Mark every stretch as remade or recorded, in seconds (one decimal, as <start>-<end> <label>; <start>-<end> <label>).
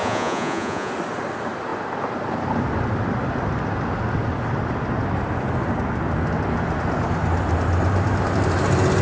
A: 0.0-0.9 remade; 0.9-9.0 recorded